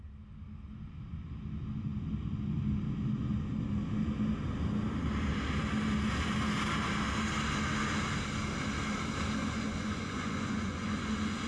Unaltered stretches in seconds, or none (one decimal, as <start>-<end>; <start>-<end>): 0.0-9.4; 11.1-11.5